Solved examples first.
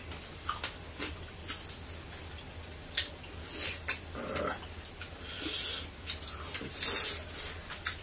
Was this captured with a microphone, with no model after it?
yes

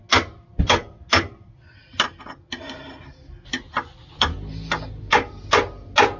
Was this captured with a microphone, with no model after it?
yes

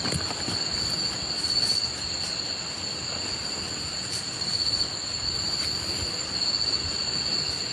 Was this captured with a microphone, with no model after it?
yes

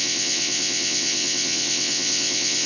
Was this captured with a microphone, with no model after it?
no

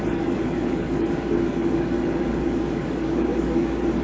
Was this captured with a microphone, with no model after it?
no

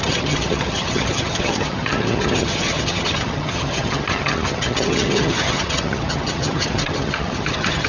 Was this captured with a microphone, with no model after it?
no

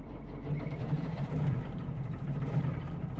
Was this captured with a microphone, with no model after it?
no